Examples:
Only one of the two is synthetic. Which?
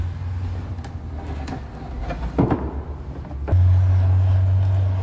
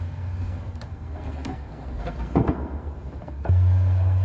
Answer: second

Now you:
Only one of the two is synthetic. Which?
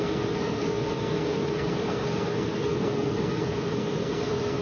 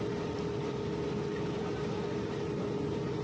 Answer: first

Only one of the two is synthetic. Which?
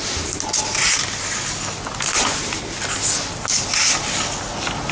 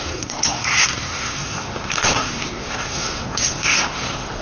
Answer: second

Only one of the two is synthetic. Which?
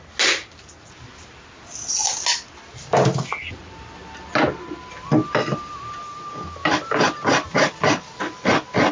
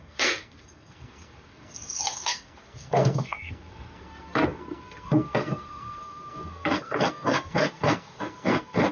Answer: second